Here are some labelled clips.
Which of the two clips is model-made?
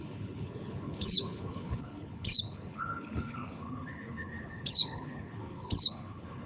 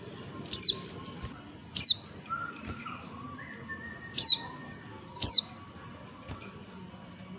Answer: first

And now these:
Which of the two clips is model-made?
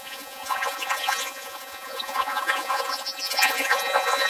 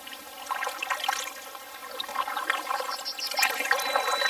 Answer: first